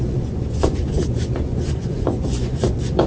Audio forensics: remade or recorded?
remade